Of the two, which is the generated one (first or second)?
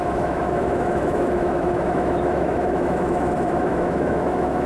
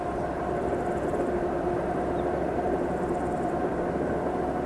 first